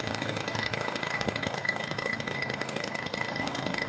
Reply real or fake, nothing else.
fake